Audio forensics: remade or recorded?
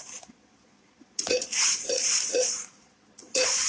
remade